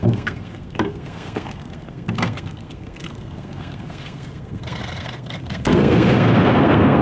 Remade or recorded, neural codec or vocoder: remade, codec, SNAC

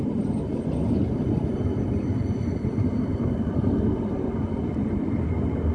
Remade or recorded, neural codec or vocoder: recorded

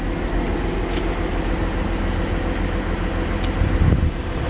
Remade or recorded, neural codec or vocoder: recorded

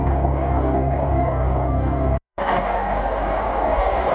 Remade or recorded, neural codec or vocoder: remade, codec, DAC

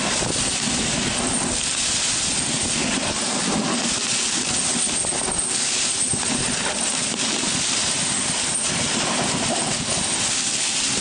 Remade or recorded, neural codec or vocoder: recorded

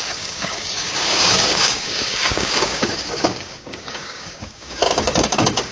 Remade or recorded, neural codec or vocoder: remade, codec, DAC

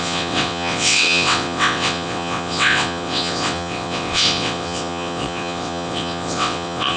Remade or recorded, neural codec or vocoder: remade, vocoder, WaveNeXt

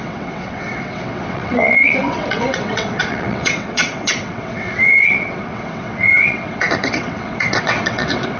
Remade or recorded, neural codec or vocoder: remade, vocoder, WaveNeXt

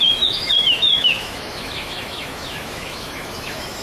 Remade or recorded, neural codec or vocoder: remade, autoencoder, DAC-VAE